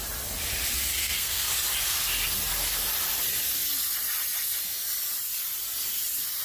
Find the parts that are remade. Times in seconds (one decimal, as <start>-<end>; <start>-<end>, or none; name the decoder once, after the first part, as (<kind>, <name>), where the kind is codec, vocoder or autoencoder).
1.0-1.5 (codec, SNAC)